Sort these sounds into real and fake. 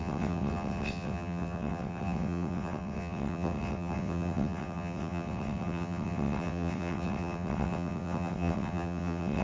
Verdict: fake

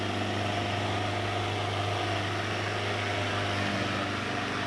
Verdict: real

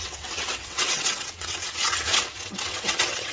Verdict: fake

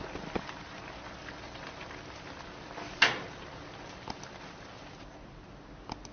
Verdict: real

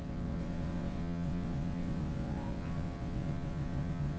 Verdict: fake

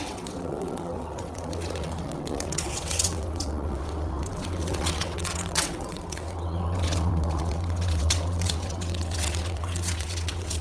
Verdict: fake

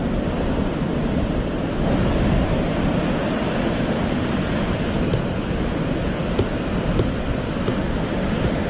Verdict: real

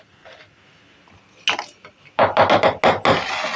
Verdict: real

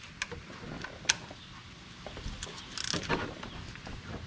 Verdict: real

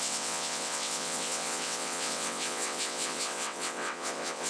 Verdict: fake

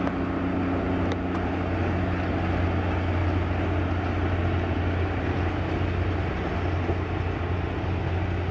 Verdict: real